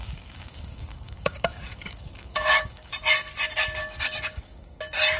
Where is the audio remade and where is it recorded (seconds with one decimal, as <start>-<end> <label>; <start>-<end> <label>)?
0.0-2.9 remade; 2.9-3.8 recorded; 3.8-4.8 remade; 4.8-5.2 recorded